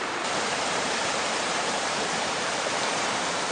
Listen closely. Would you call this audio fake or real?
fake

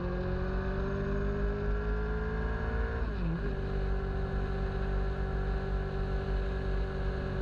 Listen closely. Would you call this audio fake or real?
real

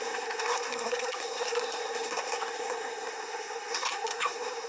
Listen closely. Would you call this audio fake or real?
fake